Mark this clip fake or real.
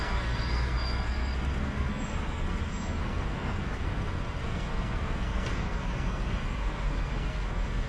fake